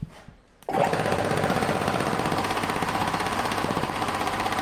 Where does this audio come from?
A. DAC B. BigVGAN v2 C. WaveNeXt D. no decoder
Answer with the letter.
B